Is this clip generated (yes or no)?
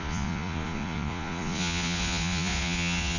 yes